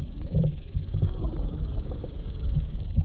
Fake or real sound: fake